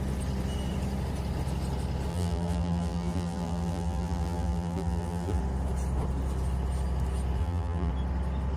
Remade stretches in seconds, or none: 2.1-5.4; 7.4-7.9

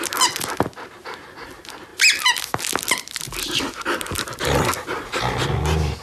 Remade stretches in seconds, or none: none

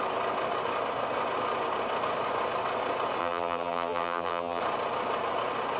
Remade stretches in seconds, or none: 3.2-4.6

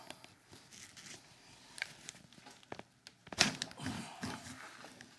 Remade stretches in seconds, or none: none

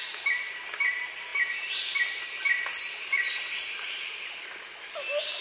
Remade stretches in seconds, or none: none